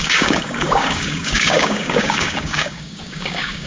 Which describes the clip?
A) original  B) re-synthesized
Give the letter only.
B